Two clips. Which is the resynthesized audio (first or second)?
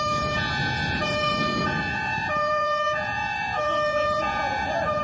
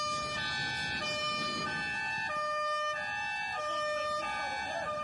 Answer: first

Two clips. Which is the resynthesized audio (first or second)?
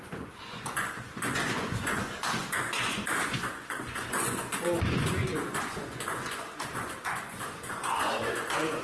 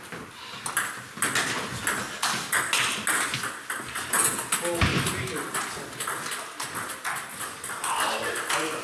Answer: first